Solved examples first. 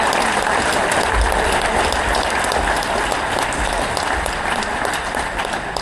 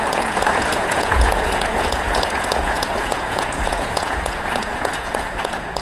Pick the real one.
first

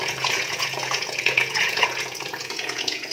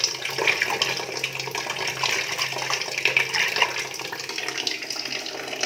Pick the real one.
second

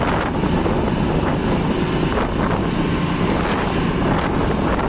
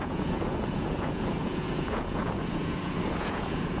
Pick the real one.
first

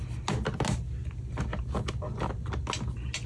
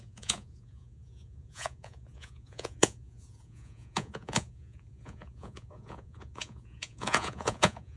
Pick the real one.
first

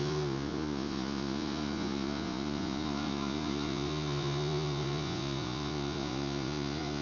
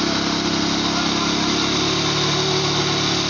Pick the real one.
second